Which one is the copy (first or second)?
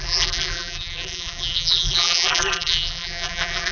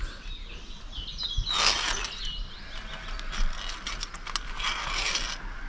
first